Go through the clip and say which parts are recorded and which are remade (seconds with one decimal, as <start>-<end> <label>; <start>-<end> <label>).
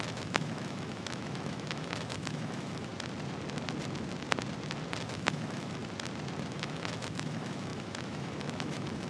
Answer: 0.0-2.9 remade; 2.9-5.0 recorded; 5.0-5.8 remade; 5.8-6.5 recorded; 6.5-9.1 remade